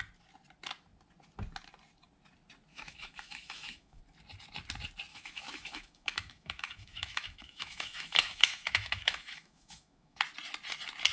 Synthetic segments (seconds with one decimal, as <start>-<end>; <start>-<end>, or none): 2.7-4.0; 5.1-10.2